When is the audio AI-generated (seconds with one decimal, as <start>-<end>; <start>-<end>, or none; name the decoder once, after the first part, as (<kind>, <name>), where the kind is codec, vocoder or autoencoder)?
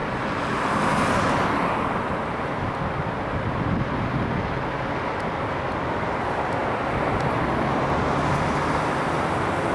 0.0-0.9 (vocoder, BigVGAN v2); 6.6-7.4